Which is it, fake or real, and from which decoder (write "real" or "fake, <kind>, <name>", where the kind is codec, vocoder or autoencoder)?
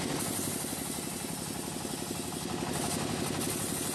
real